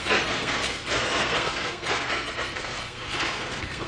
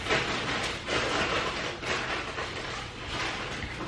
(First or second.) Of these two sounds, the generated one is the first